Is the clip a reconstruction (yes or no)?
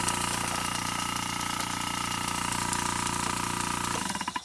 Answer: no